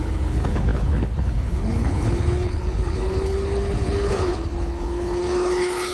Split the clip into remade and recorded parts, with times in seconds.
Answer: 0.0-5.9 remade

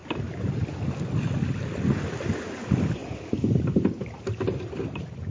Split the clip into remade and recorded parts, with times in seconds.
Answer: 0.0-5.3 recorded

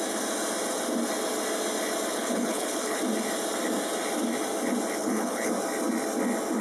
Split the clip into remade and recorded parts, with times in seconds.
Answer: 0.0-2.1 recorded; 2.1-3.0 remade; 3.0-5.0 recorded; 5.0-5.5 remade; 5.5-6.6 recorded